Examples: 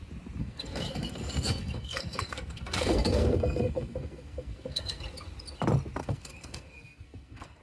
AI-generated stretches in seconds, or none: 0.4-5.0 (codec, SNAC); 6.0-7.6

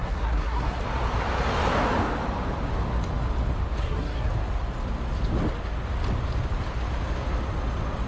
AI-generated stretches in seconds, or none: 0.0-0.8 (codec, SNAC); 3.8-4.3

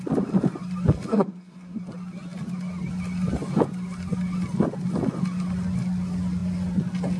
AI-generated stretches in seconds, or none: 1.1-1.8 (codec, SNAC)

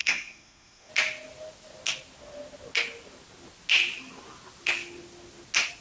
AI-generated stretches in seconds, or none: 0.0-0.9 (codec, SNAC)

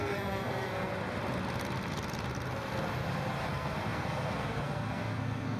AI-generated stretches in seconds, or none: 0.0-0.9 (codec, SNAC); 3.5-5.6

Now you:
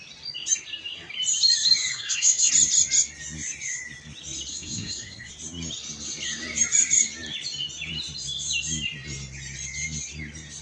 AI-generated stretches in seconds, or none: 1.9-2.5 (codec, SNAC); 4.5-5.3

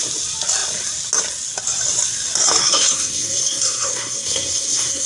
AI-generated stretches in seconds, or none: 2.6-5.1 (codec, SNAC)

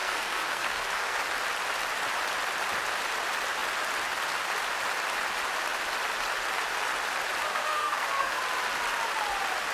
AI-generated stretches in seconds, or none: 0.0-1.2 (codec, SNAC); 7.5-8.4